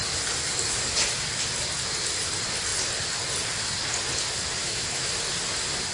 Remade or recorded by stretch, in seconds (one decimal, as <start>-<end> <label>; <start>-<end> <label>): 0.0-4.6 recorded; 4.6-5.1 remade; 5.1-5.9 recorded